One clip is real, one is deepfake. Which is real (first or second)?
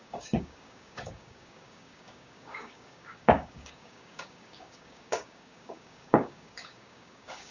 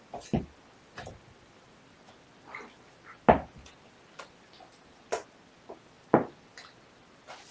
second